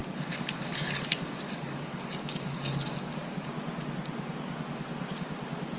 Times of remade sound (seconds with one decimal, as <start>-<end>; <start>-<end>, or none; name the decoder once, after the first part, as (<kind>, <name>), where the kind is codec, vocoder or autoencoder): 0.0-3.5 (codec, DAC)